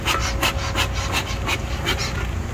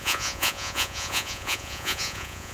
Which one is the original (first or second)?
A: first